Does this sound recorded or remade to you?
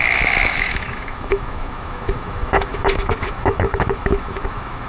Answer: remade